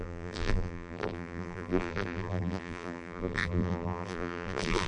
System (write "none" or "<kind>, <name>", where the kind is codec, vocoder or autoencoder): vocoder, BigVGAN v2